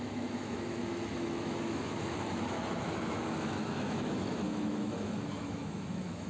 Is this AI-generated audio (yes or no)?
yes